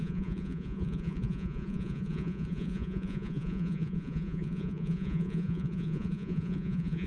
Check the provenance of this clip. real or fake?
fake